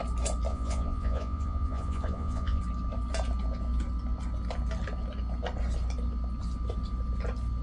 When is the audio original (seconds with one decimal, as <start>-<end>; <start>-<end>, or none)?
0.0-0.5; 2.6-7.6